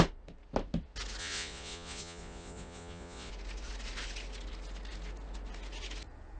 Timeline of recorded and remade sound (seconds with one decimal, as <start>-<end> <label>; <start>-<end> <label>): 0.0-1.2 recorded; 1.2-3.3 remade; 3.3-6.4 recorded